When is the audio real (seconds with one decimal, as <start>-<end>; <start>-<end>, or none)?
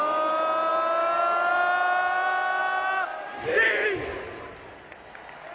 0.0-5.5